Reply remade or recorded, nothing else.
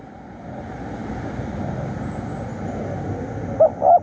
recorded